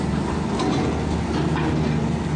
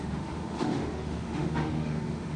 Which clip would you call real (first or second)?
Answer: first